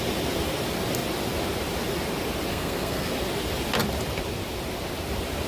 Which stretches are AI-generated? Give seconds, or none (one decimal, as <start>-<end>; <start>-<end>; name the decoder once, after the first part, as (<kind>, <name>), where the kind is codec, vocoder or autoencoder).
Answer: 2.5-3.1 (codec, SNAC)